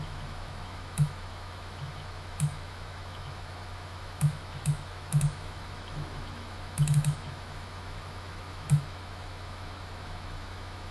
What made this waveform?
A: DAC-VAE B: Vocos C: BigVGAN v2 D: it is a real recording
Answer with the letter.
A